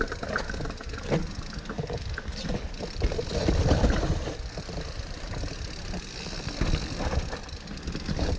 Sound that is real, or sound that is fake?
real